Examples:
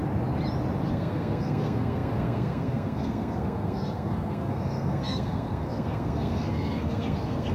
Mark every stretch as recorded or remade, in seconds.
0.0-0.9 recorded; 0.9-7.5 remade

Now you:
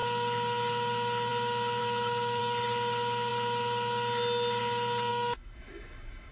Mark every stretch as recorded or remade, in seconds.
0.0-1.8 recorded; 1.8-2.4 remade; 2.4-5.1 recorded; 5.1-6.3 remade

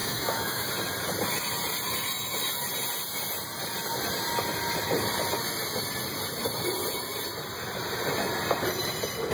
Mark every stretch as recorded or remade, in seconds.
0.0-0.7 remade; 0.7-9.3 recorded

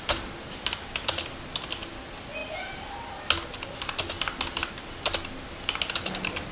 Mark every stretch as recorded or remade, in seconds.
0.0-6.5 recorded

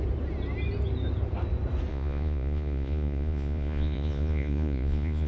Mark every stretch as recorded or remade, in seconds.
0.0-1.9 recorded; 1.9-5.3 remade

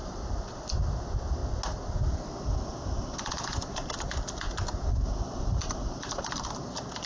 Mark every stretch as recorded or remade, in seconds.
0.0-0.6 remade; 0.6-5.0 recorded; 5.0-6.5 remade; 6.5-7.1 recorded

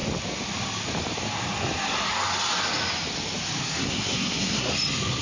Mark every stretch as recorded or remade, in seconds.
0.0-3.6 recorded; 3.6-4.7 remade; 4.7-5.2 recorded

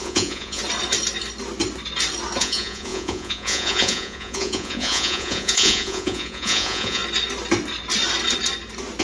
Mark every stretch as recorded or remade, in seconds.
0.0-0.6 remade; 0.6-2.4 recorded; 2.4-7.0 remade; 7.0-9.0 recorded